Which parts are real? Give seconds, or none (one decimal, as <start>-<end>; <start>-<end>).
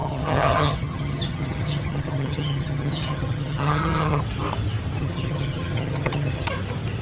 4.2-5.0; 6.5-7.0